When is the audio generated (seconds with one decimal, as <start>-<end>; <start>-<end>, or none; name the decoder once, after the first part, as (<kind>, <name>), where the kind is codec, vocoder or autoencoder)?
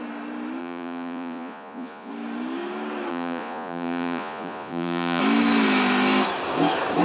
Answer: 0.6-2.1 (vocoder, Vocos); 3.1-5.2